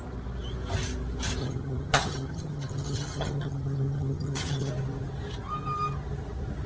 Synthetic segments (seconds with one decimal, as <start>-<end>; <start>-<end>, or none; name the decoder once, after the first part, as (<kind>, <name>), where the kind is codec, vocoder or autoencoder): 1.4-4.7 (vocoder, HiFi-GAN)